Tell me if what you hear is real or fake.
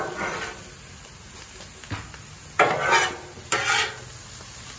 real